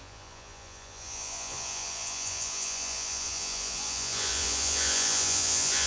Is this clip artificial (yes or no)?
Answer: yes